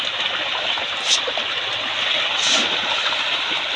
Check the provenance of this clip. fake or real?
real